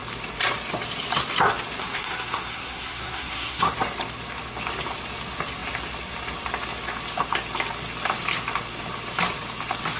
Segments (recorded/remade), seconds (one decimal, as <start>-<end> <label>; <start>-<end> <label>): 0.0-1.8 recorded; 1.8-3.7 remade; 3.7-10.0 recorded